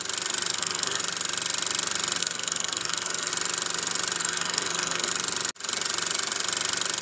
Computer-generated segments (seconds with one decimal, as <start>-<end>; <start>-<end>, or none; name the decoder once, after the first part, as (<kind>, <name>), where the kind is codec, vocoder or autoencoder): 0.5-1.0 (codec, SNAC); 2.2-3.3; 4.2-5.1